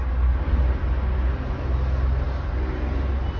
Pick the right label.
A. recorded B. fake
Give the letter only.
A